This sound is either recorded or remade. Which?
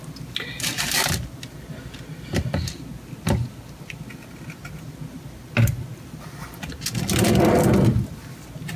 recorded